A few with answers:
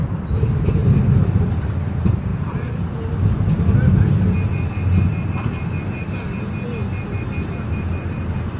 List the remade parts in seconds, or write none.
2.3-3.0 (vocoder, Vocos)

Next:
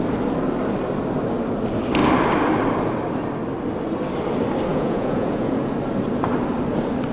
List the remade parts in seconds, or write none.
4.7-5.7 (vocoder, Vocos)

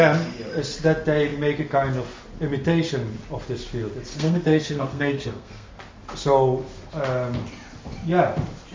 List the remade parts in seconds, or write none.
4.1-5.7 (codec, SNAC)

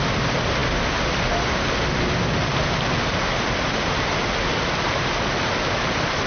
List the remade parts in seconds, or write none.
none

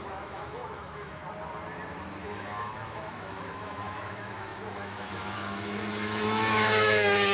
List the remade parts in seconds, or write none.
0.0-1.2 (autoencoder, DAC-VAE); 2.2-7.3

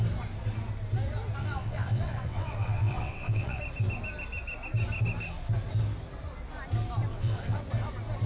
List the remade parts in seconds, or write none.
1.4-3.6 (vocoder, WaveNeXt); 7.1-7.6